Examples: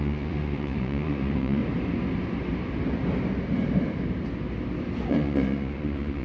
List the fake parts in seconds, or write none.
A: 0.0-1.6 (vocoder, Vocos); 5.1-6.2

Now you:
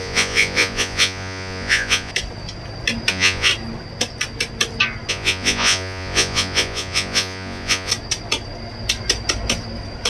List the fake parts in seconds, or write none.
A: 0.0-2.1 (vocoder, Vocos); 3.1-3.5; 5.1-7.9